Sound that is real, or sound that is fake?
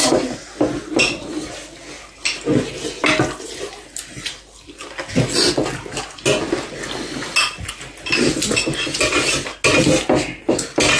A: real